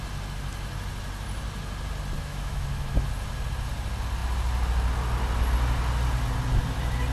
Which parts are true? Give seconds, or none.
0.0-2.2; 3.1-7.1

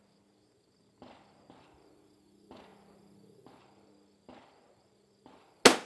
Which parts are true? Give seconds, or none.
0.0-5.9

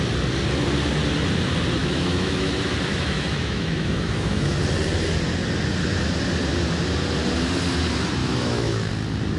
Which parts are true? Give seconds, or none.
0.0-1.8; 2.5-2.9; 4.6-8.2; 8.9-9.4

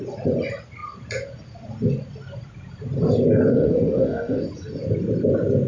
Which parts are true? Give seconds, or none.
0.0-3.5; 4.4-5.7

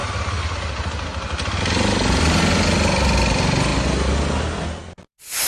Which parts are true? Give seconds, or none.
0.0-5.5

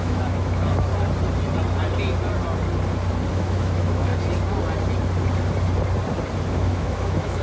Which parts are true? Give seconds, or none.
0.9-3.3; 4.1-6.5

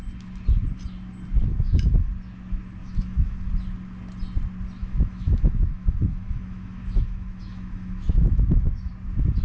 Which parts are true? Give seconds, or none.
0.0-1.5; 2.1-2.8; 3.5-4.8; 8.9-9.4

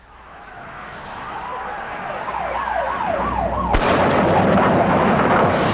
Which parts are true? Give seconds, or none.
1.5-4.9